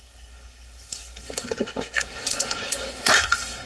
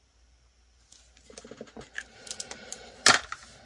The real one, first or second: second